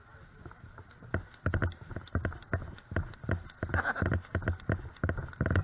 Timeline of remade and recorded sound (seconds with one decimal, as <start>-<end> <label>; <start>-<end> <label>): 0.0-5.6 recorded

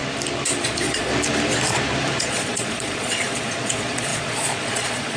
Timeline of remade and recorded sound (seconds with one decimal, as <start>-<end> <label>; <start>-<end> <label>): 0.0-0.6 recorded; 0.6-1.1 remade; 1.1-2.2 recorded; 2.2-5.2 remade

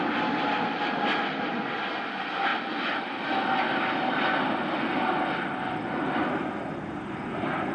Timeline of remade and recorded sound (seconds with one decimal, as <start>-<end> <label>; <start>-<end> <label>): 0.0-7.7 recorded

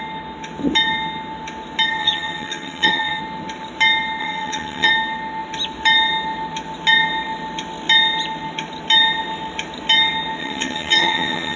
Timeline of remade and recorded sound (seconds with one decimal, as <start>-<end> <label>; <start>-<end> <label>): 0.0-2.0 recorded; 2.0-3.2 remade; 3.2-4.2 recorded; 4.2-4.9 remade; 4.9-10.4 recorded; 10.4-11.6 remade

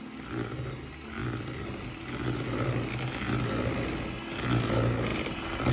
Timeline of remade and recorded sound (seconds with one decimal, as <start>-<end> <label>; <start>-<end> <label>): 0.0-5.1 recorded; 5.1-5.7 remade

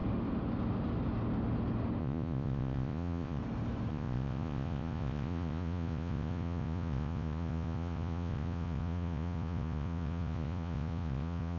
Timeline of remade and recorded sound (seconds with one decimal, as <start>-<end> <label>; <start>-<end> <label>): 0.0-2.0 recorded; 2.0-3.4 remade; 3.4-3.9 recorded; 3.9-11.6 remade

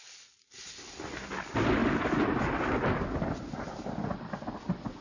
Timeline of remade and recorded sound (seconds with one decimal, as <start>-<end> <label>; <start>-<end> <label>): 0.0-5.0 recorded